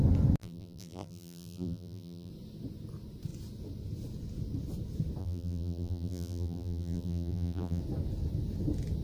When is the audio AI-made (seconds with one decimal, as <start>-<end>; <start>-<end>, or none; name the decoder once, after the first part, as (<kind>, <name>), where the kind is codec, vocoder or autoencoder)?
0.4-2.3 (vocoder, BigVGAN v2); 5.2-7.8